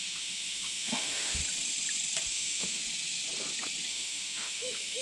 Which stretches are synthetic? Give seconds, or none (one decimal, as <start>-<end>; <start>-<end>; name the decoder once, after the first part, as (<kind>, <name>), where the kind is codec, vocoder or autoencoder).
0.0-1.4 (autoencoder, DAC-VAE); 2.3-2.8; 3.9-5.0